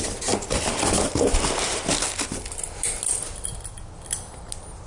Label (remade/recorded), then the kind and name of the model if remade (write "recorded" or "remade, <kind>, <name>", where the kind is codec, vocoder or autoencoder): recorded